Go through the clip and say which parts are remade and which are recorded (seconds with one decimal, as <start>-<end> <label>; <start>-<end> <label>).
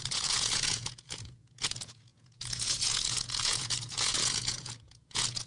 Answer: 0.0-5.5 remade